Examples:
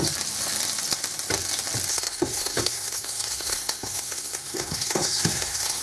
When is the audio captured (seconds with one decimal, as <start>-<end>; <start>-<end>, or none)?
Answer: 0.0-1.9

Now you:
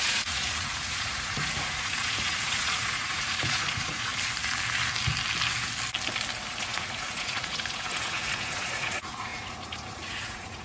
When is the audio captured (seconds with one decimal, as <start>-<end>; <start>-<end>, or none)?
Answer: 4.1-6.6

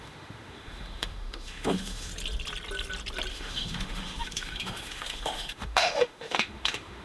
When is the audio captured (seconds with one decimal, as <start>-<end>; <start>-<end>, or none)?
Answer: 2.1-3.3

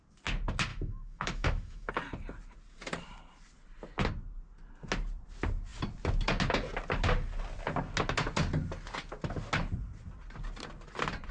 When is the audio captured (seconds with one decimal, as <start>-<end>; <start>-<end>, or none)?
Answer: 0.0-0.7; 1.9-11.3